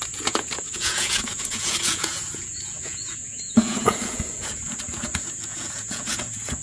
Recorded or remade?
remade